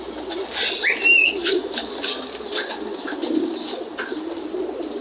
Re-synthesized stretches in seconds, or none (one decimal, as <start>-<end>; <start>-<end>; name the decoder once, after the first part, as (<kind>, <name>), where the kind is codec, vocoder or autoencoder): 1.4-1.9 (autoencoder, DAC-VAE)